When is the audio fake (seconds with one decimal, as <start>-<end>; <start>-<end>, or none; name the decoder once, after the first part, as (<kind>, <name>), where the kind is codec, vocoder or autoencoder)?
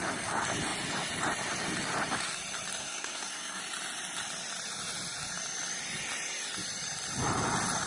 2.8-3.6 (codec, SNAC)